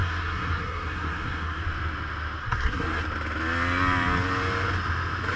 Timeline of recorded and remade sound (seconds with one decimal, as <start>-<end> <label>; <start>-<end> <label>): 0.0-1.6 remade; 1.6-2.4 recorded; 2.4-3.0 remade; 3.0-5.4 recorded